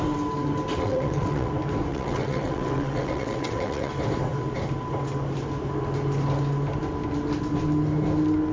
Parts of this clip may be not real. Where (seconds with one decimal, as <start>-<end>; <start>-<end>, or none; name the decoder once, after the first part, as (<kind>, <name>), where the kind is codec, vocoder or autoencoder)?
0.7-1.5 (vocoder, WaveNeXt); 1.9-3.9